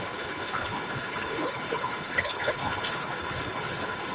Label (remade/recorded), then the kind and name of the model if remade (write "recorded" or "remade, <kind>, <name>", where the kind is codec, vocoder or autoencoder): remade, codec, HILCodec